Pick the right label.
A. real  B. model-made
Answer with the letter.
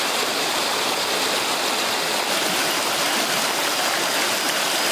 A